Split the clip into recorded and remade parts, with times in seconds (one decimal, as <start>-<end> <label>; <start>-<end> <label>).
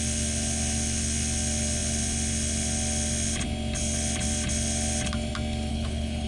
0.0-5.7 recorded; 5.7-6.3 remade